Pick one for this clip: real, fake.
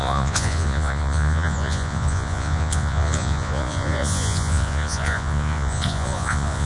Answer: fake